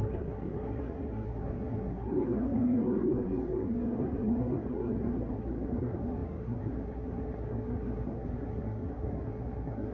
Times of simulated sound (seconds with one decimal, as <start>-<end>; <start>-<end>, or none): 0.0-9.9